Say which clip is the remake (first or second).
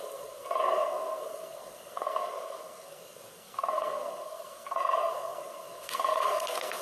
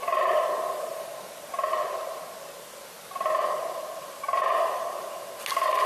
first